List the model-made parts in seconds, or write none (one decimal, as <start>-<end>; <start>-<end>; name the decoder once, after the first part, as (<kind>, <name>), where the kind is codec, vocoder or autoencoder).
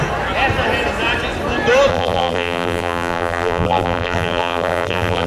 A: 1.9-5.3 (vocoder, BigVGAN v2)